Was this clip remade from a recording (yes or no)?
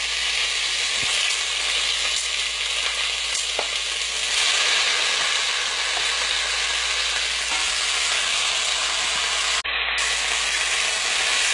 no